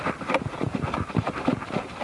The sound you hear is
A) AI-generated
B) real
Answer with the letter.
B